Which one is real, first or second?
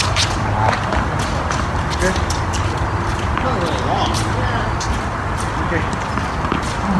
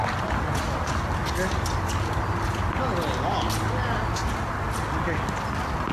second